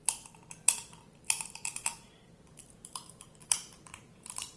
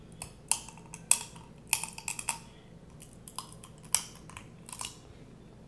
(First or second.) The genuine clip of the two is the second